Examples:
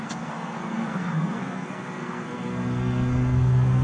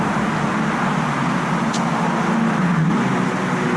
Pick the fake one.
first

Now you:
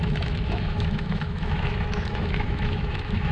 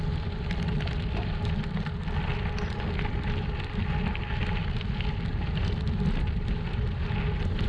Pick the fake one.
first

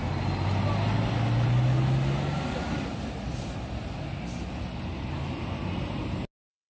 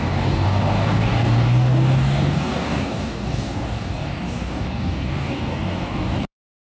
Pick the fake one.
second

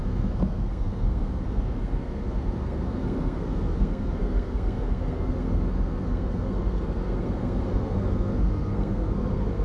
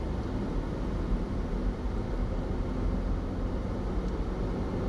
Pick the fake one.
first